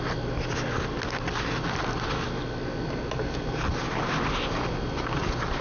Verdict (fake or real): real